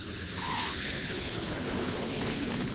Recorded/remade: remade